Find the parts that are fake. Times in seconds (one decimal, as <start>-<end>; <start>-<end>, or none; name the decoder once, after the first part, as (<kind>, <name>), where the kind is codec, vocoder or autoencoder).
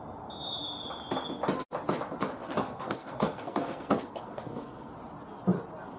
2.4-4.9 (codec, SNAC)